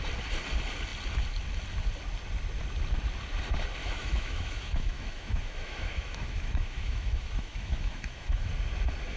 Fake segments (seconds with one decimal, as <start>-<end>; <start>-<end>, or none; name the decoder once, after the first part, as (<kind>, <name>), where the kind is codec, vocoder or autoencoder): 3.8-8.5 (autoencoder, DAC-VAE)